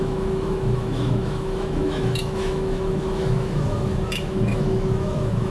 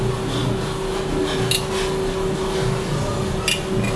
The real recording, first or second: second